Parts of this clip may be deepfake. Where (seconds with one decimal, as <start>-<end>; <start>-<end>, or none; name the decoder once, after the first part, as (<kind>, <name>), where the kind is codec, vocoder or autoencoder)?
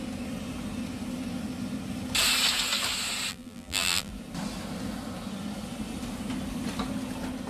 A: 3.3-4.1 (vocoder, BigVGAN v2)